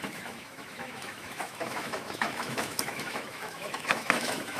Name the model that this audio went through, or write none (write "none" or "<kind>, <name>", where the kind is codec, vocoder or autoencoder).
autoencoder, DAC-VAE